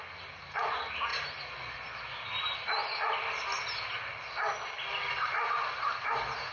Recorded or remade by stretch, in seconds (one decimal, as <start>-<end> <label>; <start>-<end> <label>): 0.0-6.5 recorded